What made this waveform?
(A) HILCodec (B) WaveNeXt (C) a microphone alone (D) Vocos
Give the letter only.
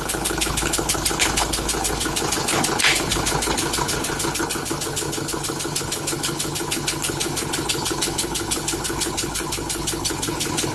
A